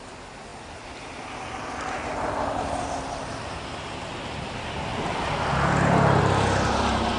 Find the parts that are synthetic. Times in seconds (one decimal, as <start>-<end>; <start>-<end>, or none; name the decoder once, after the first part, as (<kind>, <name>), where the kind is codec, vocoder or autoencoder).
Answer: none